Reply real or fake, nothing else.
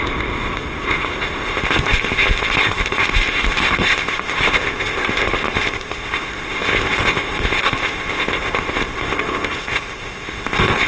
fake